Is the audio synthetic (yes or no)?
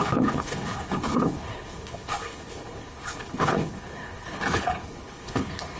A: yes